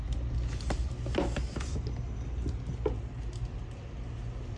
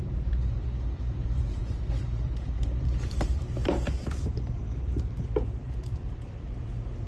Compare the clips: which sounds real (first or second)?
first